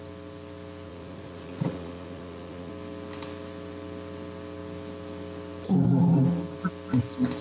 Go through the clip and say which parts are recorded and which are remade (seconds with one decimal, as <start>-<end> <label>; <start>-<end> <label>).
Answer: 0.0-0.9 recorded; 0.9-2.7 remade; 2.7-7.4 recorded